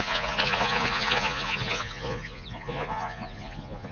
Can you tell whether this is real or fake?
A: fake